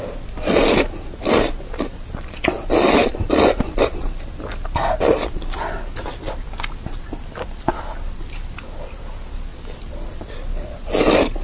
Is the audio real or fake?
real